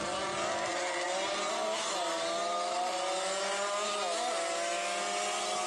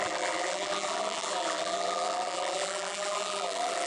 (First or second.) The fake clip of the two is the second